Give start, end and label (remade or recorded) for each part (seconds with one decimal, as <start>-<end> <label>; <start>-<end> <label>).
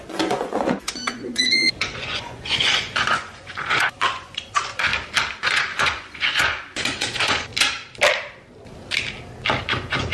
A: 0.0-4.9 remade; 4.9-5.4 recorded; 5.4-7.5 remade; 7.5-9.6 recorded; 9.6-10.1 remade